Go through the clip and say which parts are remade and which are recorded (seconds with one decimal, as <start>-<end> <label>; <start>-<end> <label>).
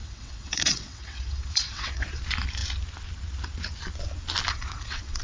0.0-2.2 remade; 2.2-4.5 recorded; 4.5-5.2 remade